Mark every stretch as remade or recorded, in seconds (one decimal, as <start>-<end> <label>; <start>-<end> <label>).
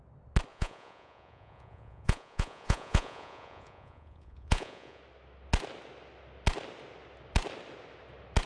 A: 0.0-0.5 recorded; 0.5-5.0 remade; 5.0-8.5 recorded